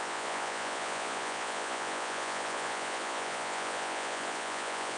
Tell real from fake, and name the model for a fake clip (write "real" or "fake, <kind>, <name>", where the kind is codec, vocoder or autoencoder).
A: fake, vocoder, Vocos